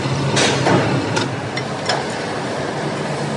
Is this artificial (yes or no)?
no